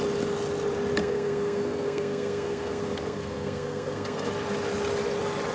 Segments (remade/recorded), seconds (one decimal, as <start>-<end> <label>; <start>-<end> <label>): 0.0-1.0 recorded; 1.0-4.3 remade; 4.3-5.5 recorded